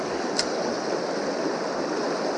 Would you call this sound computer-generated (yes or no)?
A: no